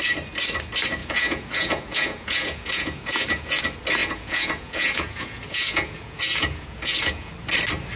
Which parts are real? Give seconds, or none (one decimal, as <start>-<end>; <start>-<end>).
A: 0.0-1.0; 3.6-4.0; 7.3-8.0